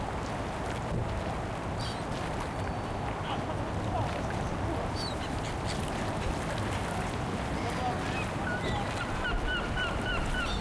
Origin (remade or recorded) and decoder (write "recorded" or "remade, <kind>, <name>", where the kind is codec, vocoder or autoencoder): recorded